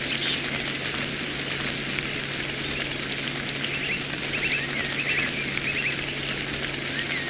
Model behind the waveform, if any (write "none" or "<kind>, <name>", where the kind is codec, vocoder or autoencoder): none